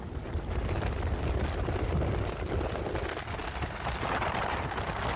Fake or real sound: real